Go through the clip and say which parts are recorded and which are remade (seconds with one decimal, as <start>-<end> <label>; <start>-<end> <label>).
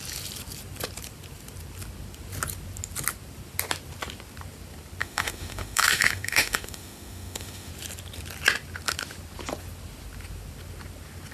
0.0-5.0 recorded; 5.0-7.7 remade; 7.7-11.3 recorded